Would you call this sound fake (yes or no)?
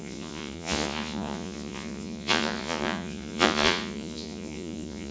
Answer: yes